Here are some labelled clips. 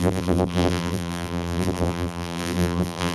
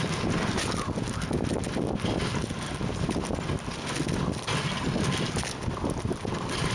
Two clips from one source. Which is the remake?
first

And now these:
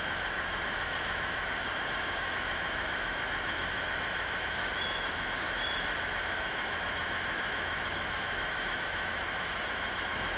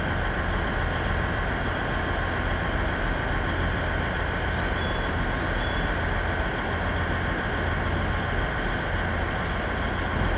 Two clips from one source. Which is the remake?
first